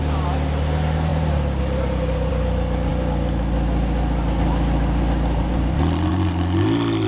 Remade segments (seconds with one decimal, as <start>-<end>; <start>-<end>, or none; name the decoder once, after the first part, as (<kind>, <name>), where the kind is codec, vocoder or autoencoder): none